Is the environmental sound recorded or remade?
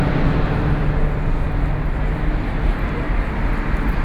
recorded